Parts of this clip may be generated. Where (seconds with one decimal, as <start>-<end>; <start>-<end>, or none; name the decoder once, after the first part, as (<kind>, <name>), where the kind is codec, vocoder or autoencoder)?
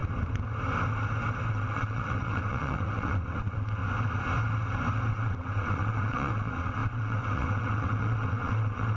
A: 1.5-3.8 (vocoder, WaveNeXt); 5.1-9.0